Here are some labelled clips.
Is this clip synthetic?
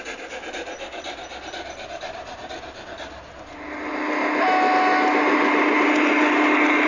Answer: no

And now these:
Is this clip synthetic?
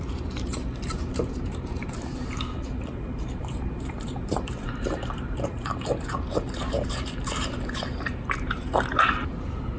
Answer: yes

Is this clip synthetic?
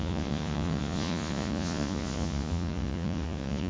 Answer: yes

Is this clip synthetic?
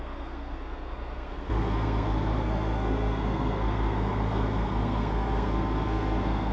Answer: yes